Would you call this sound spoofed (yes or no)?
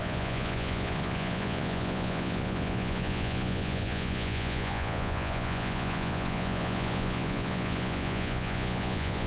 yes